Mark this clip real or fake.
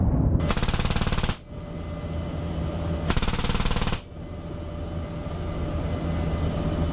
real